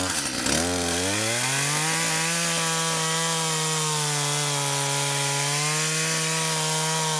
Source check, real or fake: real